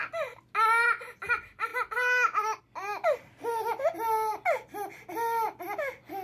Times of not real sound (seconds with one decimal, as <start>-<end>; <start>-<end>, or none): none